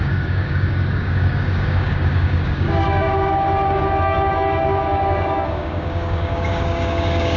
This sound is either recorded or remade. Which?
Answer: remade